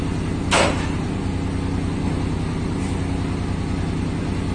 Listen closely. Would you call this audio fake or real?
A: real